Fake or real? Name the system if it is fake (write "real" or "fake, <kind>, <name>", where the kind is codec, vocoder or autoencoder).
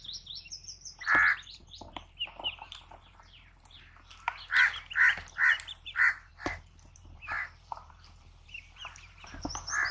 fake, vocoder, BigVGAN v2